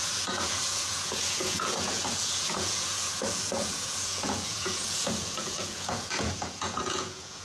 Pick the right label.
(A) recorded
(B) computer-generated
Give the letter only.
B